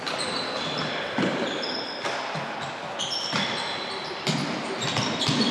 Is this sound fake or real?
real